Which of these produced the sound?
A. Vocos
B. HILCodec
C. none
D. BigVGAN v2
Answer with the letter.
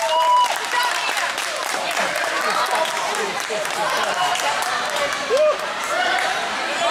D